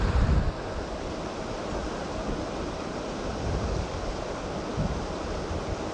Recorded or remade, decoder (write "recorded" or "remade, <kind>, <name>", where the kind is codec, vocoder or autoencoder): recorded